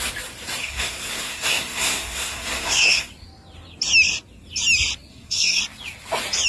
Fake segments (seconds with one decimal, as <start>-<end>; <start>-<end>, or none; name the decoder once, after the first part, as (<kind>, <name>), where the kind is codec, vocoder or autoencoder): 0.6-3.1 (codec, SNAC); 5.1-5.6